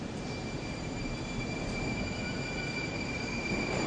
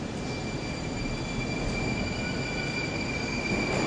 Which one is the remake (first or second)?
first